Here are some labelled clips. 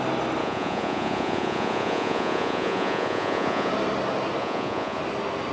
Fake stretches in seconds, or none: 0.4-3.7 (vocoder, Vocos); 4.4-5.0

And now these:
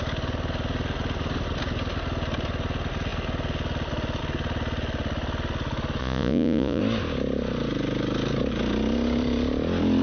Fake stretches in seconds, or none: 6.0-6.8 (vocoder, Vocos)

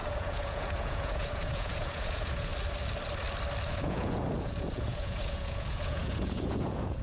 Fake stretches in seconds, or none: 0.0-2.5 (vocoder, Vocos); 3.7-7.0